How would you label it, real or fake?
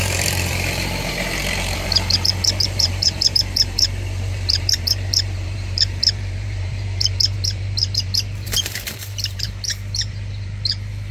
fake